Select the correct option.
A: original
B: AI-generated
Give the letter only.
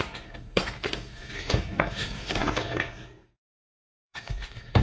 B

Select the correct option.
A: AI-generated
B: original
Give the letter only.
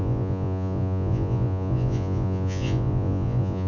A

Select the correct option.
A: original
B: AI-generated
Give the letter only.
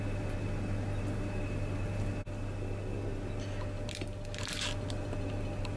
A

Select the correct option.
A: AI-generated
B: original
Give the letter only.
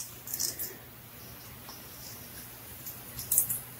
B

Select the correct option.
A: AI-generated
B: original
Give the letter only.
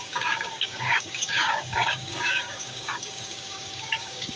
A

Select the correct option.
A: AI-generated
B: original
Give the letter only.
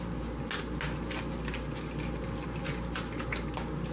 B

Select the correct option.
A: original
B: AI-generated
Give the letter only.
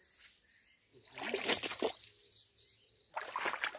A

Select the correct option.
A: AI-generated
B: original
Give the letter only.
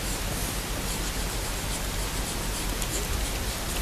B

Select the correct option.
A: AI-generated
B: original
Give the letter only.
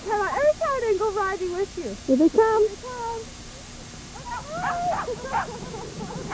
B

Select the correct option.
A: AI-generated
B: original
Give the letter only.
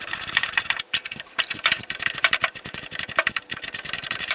A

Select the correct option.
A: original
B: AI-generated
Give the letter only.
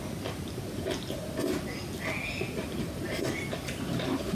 A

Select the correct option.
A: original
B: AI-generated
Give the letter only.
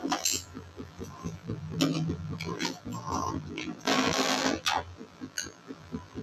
B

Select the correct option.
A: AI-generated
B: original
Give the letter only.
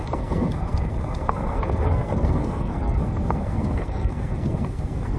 A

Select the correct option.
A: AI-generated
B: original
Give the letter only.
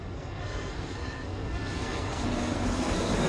A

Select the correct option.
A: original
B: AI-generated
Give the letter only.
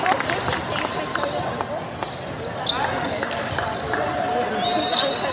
A